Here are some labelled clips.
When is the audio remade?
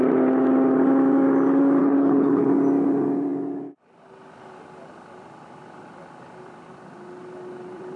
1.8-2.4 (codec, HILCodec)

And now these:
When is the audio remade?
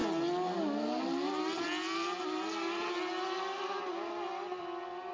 none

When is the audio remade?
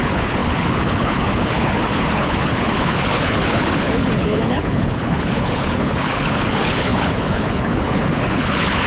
0.0-8.9 (codec, HILCodec)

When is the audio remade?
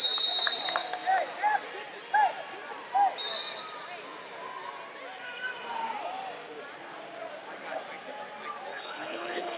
8.7-9.6 (codec, HILCodec)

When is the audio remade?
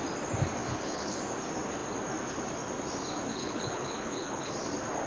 0.6-1.2 (codec, HILCodec); 3.3-4.5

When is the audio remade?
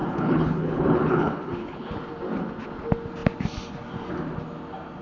0.0-2.0 (codec, HILCodec)